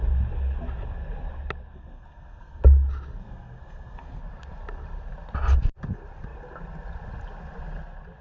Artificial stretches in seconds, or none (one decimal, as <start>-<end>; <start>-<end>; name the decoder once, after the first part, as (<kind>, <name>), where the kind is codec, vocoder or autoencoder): 1.7-2.6 (codec, SNAC); 3.2-4.2